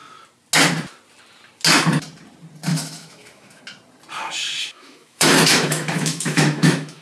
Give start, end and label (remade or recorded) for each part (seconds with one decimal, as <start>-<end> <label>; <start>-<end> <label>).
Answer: 0.0-2.7 recorded; 2.7-3.6 remade; 3.6-4.6 recorded; 4.6-7.0 remade